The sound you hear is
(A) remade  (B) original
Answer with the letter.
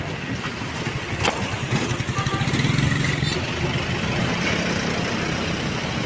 B